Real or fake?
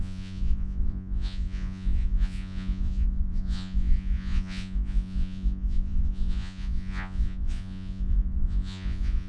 fake